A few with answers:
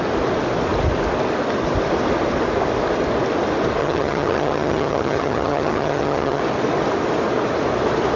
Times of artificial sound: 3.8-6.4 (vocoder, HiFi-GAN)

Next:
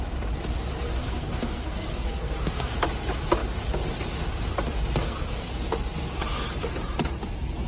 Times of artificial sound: 1.0-2.7 (codec, SNAC); 5.0-5.5

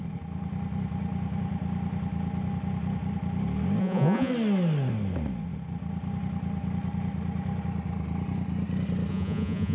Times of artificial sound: 3.8-4.3 (vocoder, Vocos); 9.1-9.7

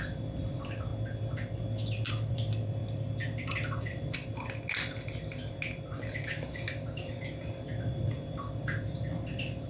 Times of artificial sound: 0.0-0.9 (vocoder, BigVGAN v2); 2.1-2.8; 3.8-4.2; 6.3-9.7

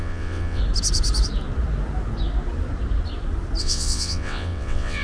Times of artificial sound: 0.0-0.6 (vocoder, WaveNeXt); 3.6-5.0

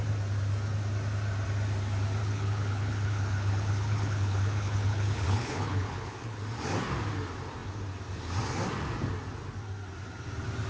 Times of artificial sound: 2.2-6.4 (codec, HILCodec)

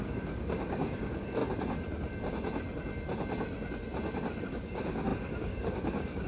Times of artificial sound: 0.0-1.4 (codec, DAC); 4.4-6.3

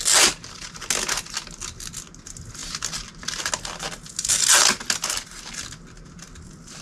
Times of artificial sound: none